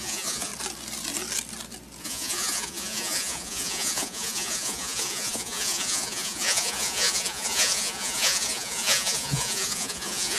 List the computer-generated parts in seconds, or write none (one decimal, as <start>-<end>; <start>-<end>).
0.0-0.5; 2.0-10.4